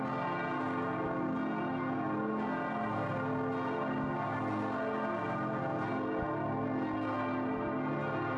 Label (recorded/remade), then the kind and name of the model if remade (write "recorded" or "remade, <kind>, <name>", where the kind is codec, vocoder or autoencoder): recorded